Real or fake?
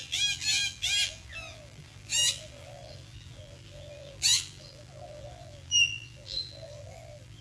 fake